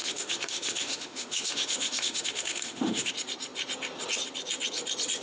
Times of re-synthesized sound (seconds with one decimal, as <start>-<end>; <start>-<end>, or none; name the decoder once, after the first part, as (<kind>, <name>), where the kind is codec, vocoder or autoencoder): 0.0-3.1 (autoencoder, DAC-VAE)